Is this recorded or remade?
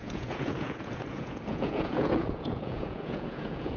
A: remade